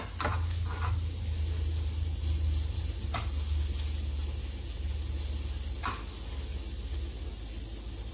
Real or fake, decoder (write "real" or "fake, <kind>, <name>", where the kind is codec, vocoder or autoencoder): real